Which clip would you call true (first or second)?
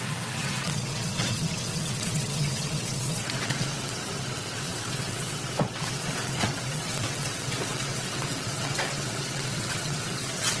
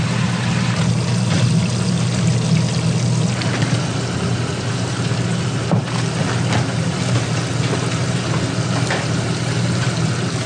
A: second